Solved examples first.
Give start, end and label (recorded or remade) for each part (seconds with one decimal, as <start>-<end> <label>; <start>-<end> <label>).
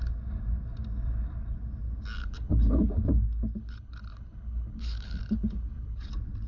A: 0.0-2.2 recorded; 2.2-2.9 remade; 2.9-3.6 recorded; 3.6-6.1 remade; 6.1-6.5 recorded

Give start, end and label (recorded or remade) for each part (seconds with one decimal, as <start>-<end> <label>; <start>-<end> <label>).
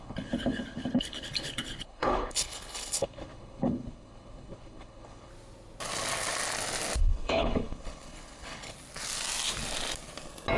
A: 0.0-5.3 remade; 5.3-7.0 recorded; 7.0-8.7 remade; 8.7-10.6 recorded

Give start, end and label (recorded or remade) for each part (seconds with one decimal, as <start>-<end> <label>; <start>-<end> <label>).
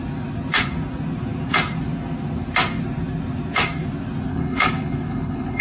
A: 0.0-4.3 recorded; 4.3-5.6 remade